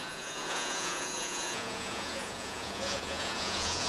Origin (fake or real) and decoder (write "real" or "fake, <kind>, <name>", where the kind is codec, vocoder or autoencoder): fake, vocoder, Vocos